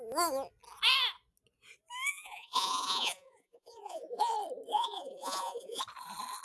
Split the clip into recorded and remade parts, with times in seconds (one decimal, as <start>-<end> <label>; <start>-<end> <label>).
0.0-2.1 recorded; 2.1-4.3 remade; 4.3-4.7 recorded; 4.7-5.8 remade; 5.8-6.4 recorded